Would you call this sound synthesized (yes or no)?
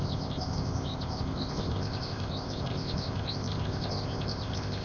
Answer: yes